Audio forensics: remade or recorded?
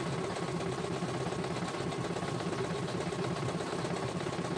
recorded